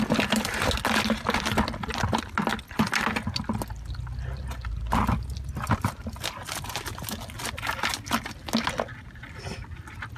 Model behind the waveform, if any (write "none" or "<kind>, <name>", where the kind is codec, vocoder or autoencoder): none